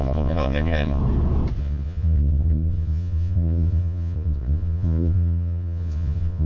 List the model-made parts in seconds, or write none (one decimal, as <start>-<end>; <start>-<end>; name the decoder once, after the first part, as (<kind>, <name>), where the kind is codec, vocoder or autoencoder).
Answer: 0.0-1.0 (vocoder, Vocos); 1.6-6.5